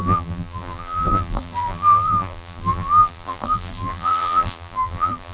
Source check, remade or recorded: remade